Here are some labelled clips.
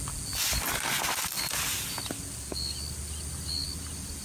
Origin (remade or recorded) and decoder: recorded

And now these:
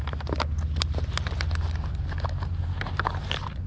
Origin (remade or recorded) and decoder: recorded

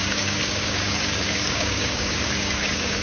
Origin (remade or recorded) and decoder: remade, codec, DAC